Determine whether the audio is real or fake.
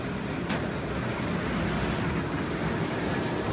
real